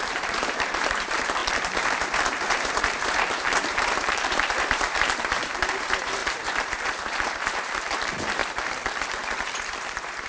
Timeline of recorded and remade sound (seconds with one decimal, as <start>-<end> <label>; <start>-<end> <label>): 0.0-8.4 remade; 8.4-9.4 recorded; 9.4-10.3 remade